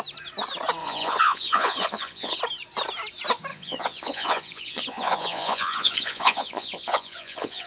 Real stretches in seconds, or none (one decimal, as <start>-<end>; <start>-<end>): 0.0-0.8; 2.4-3.5